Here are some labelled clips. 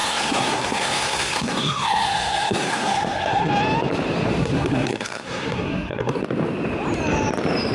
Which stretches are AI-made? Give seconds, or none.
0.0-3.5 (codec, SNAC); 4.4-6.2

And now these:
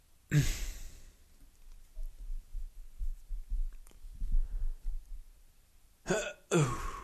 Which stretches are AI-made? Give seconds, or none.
2.5-7.0 (vocoder, BigVGAN v2)